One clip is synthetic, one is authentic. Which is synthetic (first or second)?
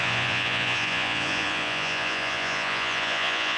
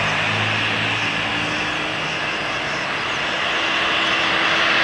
first